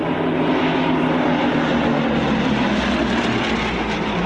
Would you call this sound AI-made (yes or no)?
no